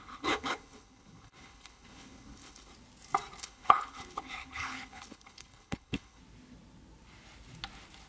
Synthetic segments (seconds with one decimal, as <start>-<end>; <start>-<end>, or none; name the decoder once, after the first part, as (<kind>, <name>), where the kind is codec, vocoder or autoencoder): 0.0-2.7 (codec, HILCodec); 3.4-6.2

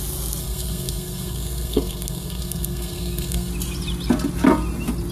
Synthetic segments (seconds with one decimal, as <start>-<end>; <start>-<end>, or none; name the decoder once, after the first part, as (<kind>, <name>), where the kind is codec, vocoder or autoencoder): 0.4-3.5 (codec, SNAC)

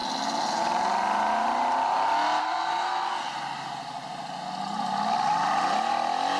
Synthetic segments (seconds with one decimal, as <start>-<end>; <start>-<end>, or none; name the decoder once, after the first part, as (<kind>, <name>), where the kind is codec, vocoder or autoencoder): 2.4-3.1 (codec, SNAC)

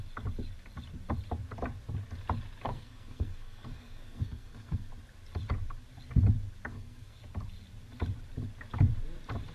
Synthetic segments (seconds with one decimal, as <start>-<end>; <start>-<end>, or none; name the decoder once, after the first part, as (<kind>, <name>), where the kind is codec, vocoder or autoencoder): 2.7-4.9 (codec, SNAC); 6.7-7.2

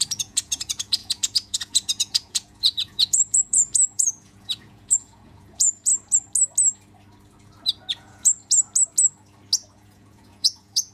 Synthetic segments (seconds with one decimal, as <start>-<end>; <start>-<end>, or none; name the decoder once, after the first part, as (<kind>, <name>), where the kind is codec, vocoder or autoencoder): 0.0-5.9 (vocoder, Vocos); 7.9-8.4; 9.7-10.9

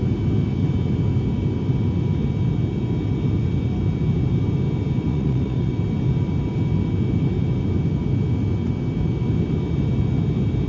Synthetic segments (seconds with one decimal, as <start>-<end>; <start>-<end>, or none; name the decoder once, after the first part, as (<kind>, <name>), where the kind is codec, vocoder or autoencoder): 5.1-5.7 (vocoder, Vocos)